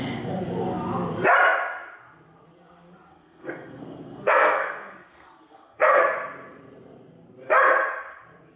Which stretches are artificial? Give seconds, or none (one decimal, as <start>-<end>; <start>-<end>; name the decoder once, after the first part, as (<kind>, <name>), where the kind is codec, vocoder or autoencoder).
3.1-6.0 (codec, SNAC)